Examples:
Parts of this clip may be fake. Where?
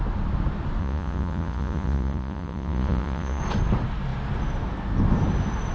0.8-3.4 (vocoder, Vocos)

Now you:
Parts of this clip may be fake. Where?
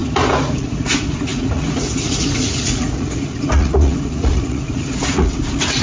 0.5-5.8 (vocoder, Vocos)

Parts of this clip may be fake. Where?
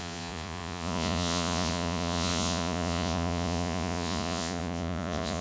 0.0-5.4 (vocoder, Vocos)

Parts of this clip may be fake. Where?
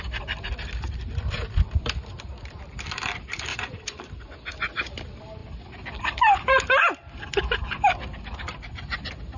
3.5-4.1 (vocoder, Vocos)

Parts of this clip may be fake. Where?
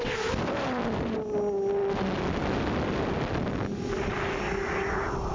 none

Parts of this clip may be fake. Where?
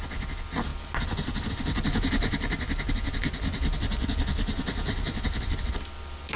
none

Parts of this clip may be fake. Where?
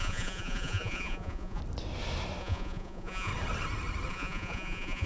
0.0-1.6 (vocoder, Vocos); 2.4-3.3; 4.1-5.1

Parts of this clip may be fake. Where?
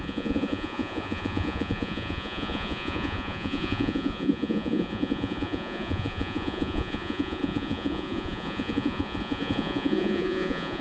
0.0-10.8 (vocoder, Vocos)